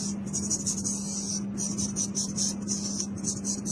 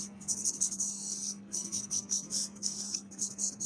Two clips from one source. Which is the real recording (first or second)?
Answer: first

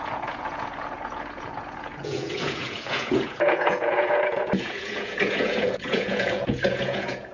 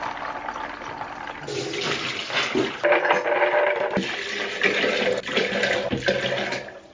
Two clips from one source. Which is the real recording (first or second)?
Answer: second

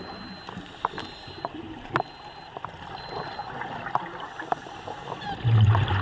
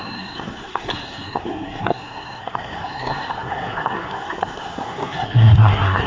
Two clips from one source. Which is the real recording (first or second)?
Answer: first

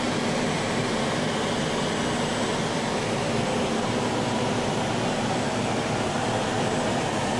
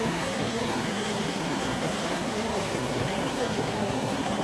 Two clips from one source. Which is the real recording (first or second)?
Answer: first